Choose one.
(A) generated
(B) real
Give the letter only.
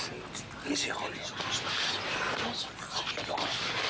B